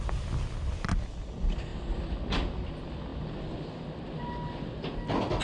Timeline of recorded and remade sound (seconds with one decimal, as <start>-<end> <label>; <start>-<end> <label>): 0.0-5.4 recorded

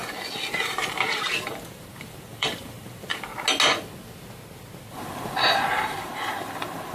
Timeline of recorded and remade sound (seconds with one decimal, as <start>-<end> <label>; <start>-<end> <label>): 0.0-0.7 recorded; 0.7-3.3 remade; 3.3-4.9 recorded; 4.9-6.9 remade

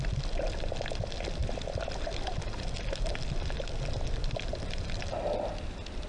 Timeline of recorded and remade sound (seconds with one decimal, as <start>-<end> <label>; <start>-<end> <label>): 0.0-1.4 recorded; 1.4-5.1 remade; 5.1-6.1 recorded

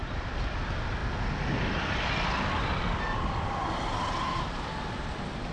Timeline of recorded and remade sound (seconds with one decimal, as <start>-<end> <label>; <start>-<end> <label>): 0.0-0.6 remade; 0.6-5.5 recorded

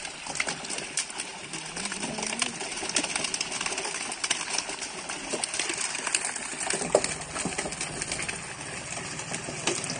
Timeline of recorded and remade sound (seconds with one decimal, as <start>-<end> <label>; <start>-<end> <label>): 0.0-10.0 recorded

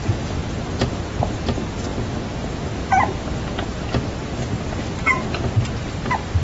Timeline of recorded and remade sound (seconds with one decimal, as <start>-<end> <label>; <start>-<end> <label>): 0.0-6.4 recorded

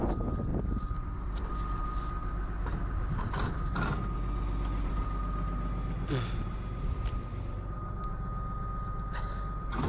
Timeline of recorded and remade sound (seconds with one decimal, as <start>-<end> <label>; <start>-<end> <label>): 0.0-0.5 recorded; 0.5-1.5 remade; 1.5-9.9 recorded

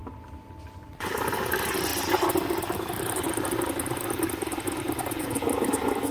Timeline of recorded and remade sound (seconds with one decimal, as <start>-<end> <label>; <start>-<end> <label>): 0.0-1.9 recorded; 1.9-5.3 remade; 5.3-6.1 recorded